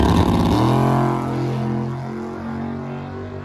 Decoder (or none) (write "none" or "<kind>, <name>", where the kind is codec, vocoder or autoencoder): none